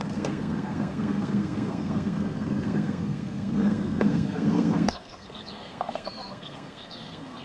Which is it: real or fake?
fake